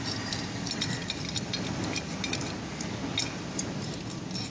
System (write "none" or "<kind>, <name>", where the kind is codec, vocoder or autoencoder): none